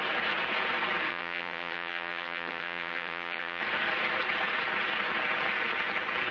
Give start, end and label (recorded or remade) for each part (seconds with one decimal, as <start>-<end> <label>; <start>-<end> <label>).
0.0-1.1 recorded; 1.1-3.6 remade; 3.6-6.3 recorded